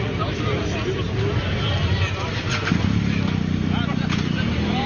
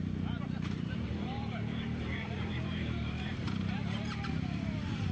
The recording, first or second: first